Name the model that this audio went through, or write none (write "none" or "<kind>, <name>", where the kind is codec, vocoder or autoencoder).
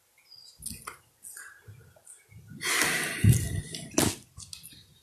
none